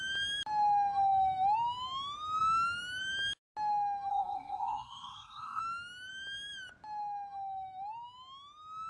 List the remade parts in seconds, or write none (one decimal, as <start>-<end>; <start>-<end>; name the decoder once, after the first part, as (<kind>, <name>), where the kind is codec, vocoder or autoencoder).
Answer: 4.1-5.6 (codec, SNAC)